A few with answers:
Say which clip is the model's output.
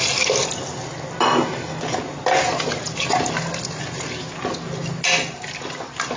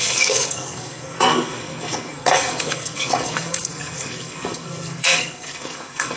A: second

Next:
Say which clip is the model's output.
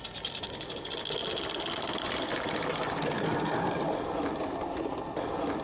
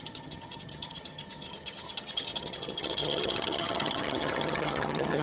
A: second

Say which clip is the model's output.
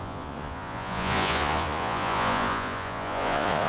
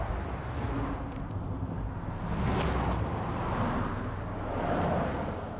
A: first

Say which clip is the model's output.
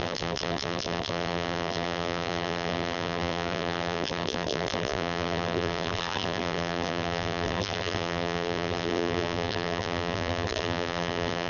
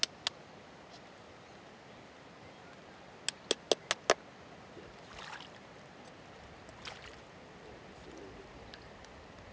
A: first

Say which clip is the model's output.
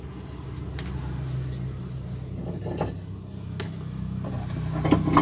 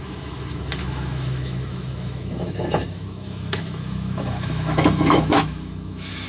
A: second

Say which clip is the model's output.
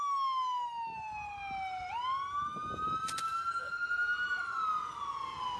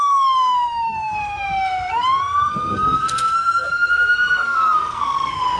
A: second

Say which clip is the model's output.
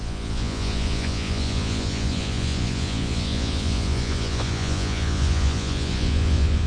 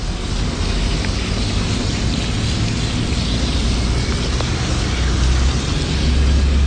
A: first